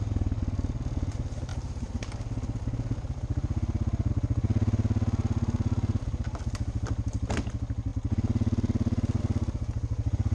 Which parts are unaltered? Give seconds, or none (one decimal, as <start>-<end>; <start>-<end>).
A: 0.0-10.3